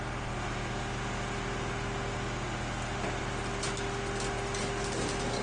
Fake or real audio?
real